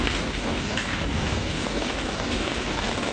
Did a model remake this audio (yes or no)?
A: yes